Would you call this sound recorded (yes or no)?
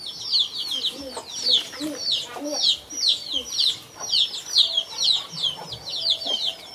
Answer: yes